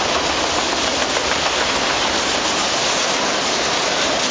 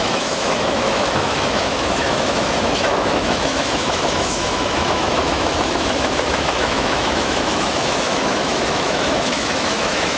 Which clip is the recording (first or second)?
first